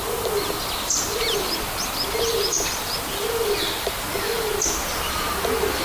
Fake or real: real